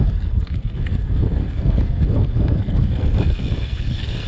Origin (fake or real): fake